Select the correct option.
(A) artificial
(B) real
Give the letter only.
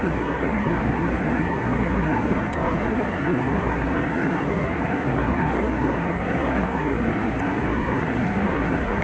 A